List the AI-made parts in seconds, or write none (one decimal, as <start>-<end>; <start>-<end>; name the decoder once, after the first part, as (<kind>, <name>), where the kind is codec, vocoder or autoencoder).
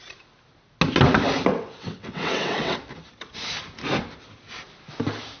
1.5-2.8 (vocoder, WaveNeXt)